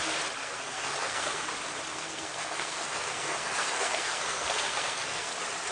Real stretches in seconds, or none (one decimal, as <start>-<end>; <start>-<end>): 0.0-0.4; 1.5-1.9; 5.3-5.7